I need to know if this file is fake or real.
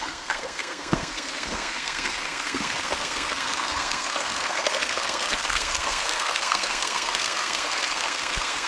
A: fake